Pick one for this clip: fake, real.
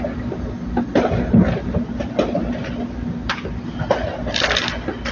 real